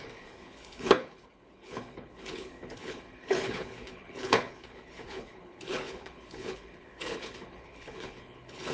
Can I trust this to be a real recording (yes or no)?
no